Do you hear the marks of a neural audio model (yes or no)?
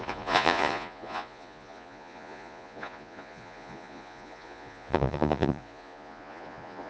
yes